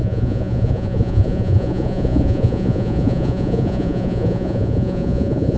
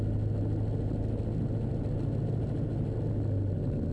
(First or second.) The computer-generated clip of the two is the first